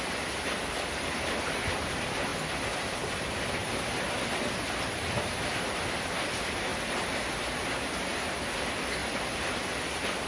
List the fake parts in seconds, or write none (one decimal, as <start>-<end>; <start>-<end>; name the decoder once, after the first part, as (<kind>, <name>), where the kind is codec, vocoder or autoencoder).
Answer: 2.3-4.1 (vocoder, BigVGAN v2); 6.7-8.3; 9.0-9.5